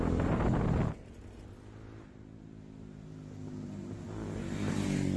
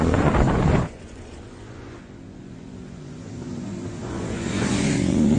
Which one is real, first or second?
first